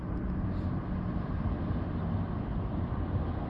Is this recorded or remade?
recorded